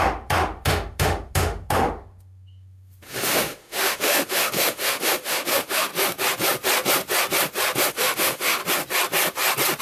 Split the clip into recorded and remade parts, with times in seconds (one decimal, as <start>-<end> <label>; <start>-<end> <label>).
0.0-5.9 remade; 5.9-7.9 recorded; 7.9-8.6 remade; 8.6-9.8 recorded